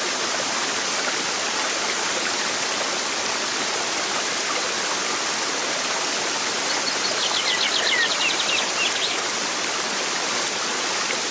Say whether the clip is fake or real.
real